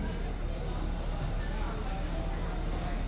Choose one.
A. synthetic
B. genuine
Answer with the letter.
B